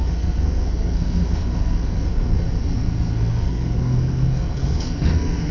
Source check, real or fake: fake